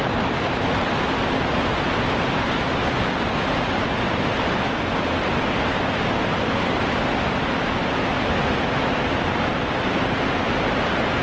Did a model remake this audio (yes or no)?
no